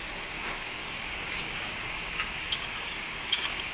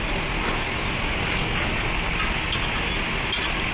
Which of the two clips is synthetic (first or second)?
first